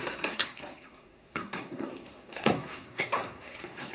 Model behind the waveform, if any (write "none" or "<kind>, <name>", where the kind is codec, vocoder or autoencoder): codec, SNAC